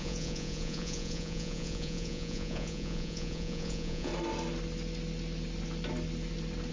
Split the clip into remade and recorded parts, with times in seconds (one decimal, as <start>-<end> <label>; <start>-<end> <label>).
0.0-4.1 remade; 4.1-6.7 recorded